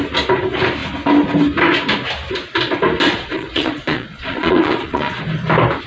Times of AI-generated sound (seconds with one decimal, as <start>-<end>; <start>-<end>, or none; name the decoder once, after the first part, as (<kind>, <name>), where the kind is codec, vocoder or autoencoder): 3.1-5.1 (vocoder, Vocos)